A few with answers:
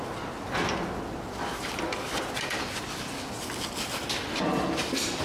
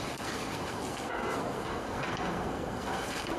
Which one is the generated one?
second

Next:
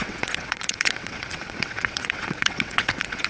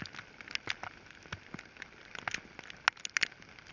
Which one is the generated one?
first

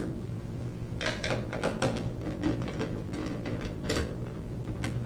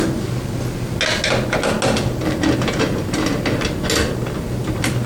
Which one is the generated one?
first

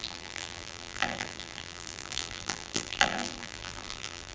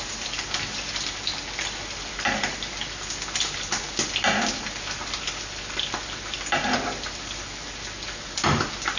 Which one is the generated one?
first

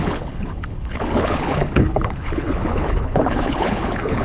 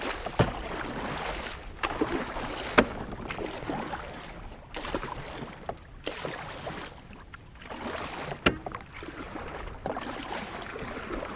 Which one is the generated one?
first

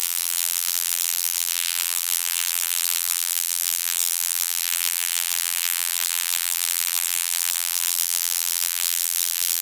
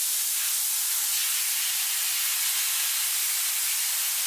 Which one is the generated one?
first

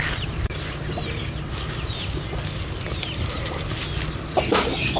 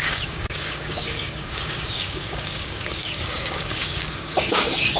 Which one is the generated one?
second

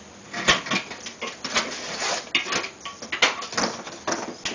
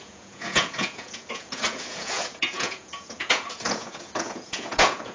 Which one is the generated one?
second